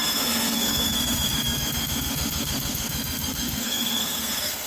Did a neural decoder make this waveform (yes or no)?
yes